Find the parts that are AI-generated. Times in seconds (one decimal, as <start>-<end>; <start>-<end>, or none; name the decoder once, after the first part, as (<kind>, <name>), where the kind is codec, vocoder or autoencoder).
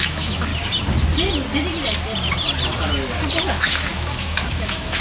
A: 0.0-0.5 (autoencoder, DAC-VAE); 3.5-5.0